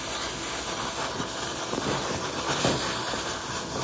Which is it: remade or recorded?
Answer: recorded